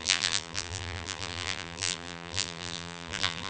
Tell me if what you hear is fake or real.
fake